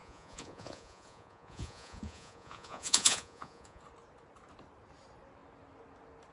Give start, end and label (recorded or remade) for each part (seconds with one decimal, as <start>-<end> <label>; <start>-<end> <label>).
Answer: 0.0-3.8 remade; 3.8-6.3 recorded